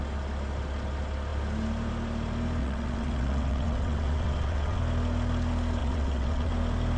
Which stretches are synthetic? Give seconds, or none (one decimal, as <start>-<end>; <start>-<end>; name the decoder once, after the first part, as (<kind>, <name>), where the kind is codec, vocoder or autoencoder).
2.6-4.8 (vocoder, WaveNeXt); 5.8-6.5